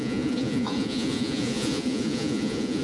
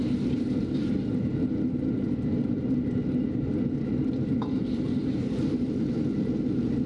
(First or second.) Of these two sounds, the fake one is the first